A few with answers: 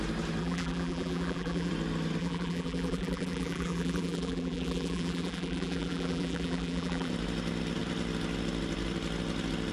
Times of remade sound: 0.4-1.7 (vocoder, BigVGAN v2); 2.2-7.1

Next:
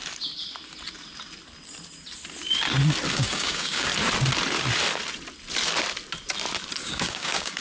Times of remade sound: 3.1-3.9 (codec, DAC); 6.8-7.6

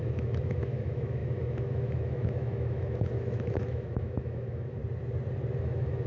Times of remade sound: 0.0-4.8 (autoencoder, DAC-VAE); 5.6-6.1

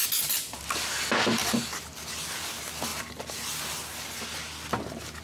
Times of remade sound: 1.4-2.1 (vocoder, BigVGAN v2); 2.9-3.6

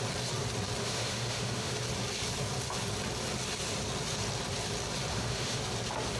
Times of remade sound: 0.8-1.7 (autoencoder, DAC-VAE); 5.1-5.6

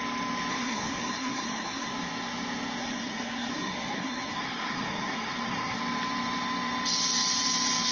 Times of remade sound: 0.5-1.9 (codec, SNAC); 2.8-5.8